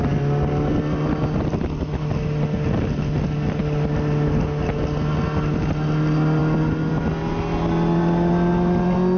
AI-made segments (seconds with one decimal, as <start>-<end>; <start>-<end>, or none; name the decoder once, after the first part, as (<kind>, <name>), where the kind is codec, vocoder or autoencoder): none